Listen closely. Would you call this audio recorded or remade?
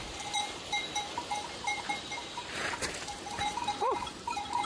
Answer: remade